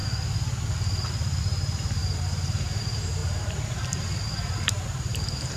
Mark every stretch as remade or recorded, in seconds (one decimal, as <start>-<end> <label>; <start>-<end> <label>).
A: 0.0-1.4 recorded; 1.4-5.6 remade